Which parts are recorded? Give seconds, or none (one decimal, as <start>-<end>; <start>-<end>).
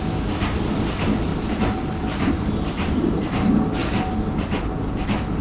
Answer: 0.0-1.3; 3.2-3.8; 4.6-5.4